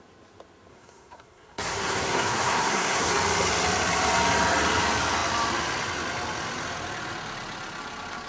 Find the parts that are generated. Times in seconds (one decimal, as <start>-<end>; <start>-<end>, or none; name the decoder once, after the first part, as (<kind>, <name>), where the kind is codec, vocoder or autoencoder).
0.7-3.1 (codec, SNAC)